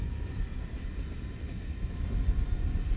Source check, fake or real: real